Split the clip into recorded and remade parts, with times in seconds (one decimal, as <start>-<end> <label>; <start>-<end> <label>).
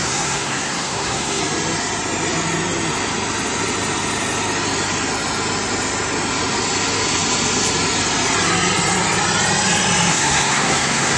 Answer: 0.0-1.4 remade; 1.4-10.1 recorded; 10.1-11.2 remade